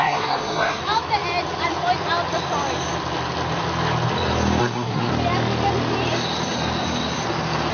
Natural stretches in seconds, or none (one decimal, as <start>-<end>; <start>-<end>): 0.8-4.6; 5.1-7.7